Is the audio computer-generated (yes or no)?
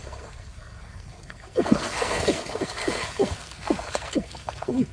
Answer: yes